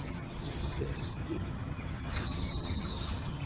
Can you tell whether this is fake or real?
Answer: fake